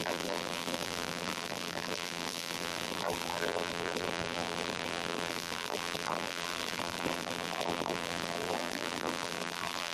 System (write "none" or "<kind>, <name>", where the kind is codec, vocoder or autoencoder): vocoder, BigVGAN v2